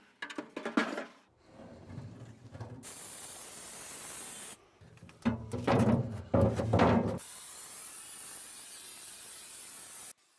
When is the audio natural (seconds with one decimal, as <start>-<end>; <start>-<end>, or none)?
0.0-0.8; 2.1-5.3; 6.3-7.2; 8.0-10.4